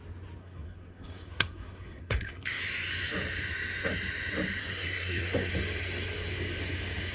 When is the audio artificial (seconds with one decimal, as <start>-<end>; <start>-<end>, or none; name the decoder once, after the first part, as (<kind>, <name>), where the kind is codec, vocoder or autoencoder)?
0.4-2.6 (codec, SNAC); 4.6-5.5